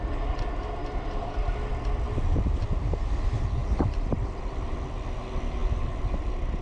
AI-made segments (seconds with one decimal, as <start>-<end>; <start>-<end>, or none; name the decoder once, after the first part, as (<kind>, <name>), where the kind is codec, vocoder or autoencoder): 3.6-4.4 (vocoder, BigVGAN v2)